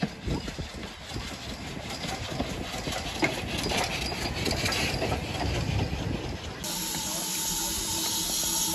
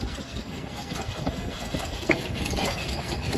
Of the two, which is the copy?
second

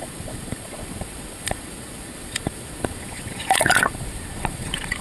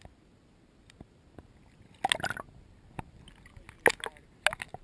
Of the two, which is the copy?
first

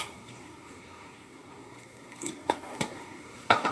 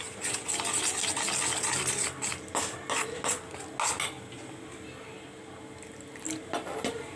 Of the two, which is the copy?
first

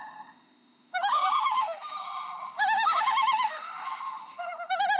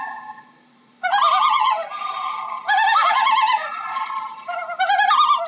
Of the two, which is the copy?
first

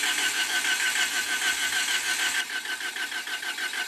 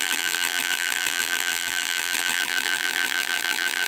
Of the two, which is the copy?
second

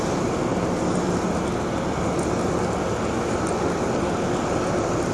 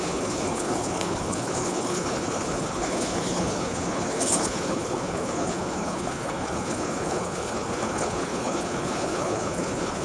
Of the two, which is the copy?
second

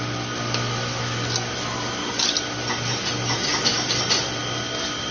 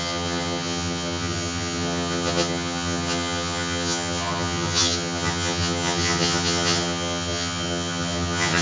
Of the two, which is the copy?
second